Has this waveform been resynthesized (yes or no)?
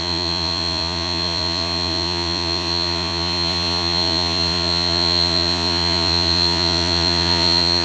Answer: yes